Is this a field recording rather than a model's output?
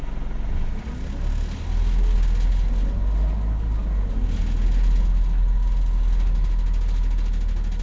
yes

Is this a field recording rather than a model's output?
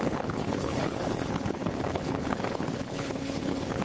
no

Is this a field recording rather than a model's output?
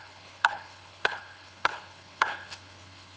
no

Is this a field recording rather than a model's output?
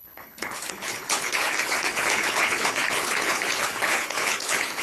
no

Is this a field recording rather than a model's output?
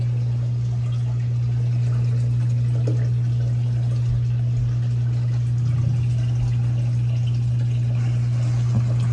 yes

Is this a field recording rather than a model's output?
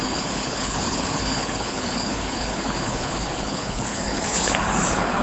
no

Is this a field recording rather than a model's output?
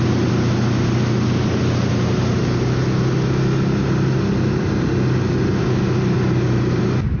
yes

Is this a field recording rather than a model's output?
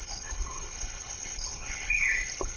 no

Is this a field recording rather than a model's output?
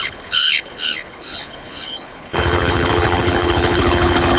no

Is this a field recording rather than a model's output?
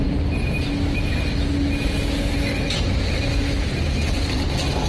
yes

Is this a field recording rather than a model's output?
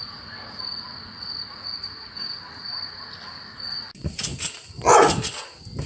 yes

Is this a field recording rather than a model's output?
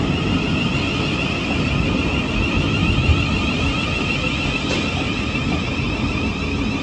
yes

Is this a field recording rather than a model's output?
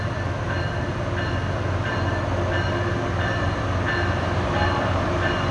yes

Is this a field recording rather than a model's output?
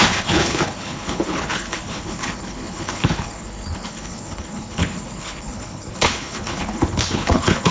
no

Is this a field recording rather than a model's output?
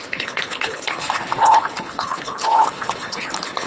no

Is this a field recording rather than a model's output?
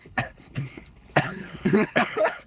no